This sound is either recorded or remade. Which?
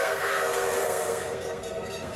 remade